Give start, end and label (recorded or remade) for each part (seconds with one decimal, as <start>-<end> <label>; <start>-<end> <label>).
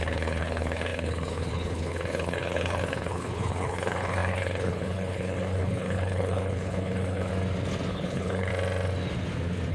0.0-7.3 remade; 7.3-7.9 recorded; 7.9-8.5 remade; 8.5-9.7 recorded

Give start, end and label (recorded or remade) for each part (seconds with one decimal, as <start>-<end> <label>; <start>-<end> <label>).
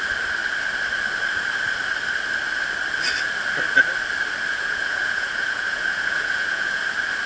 0.0-4.5 recorded; 4.5-6.8 remade; 6.8-7.3 recorded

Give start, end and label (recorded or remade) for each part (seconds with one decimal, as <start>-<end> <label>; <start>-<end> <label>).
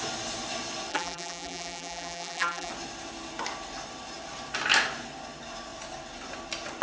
0.0-0.9 recorded; 0.9-2.7 remade; 2.7-6.8 recorded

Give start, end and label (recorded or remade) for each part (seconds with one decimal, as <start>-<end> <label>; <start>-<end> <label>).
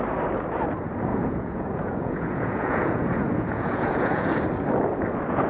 0.0-1.1 recorded; 1.1-4.4 remade; 4.4-5.5 recorded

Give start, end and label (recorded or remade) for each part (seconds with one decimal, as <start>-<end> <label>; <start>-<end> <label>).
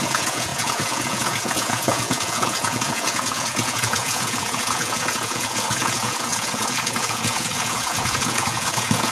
0.0-9.1 remade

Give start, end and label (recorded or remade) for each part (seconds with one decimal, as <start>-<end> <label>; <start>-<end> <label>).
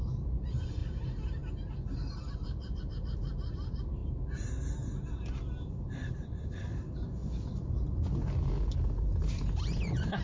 0.0-0.8 remade; 0.8-2.2 recorded; 2.2-4.0 remade; 4.0-5.1 recorded; 5.1-10.2 remade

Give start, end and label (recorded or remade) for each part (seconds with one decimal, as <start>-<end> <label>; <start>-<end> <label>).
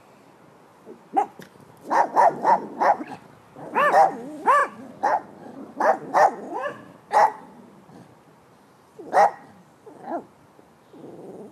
0.0-11.5 recorded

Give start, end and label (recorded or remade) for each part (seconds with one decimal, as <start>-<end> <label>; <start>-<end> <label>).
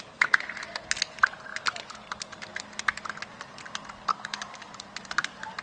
0.0-4.1 recorded; 4.1-4.7 remade; 4.7-5.6 recorded